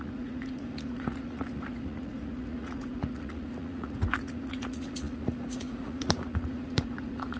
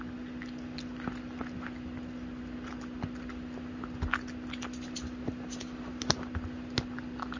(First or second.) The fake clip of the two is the first